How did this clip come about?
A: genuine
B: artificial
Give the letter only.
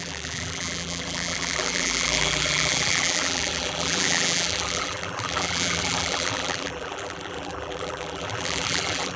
B